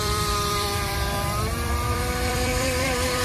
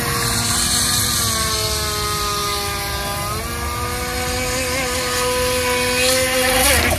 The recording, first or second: second